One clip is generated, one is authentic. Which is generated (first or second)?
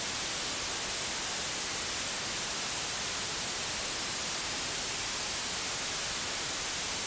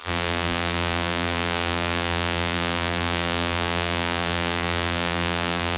second